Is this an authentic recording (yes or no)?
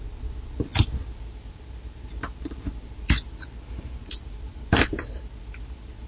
yes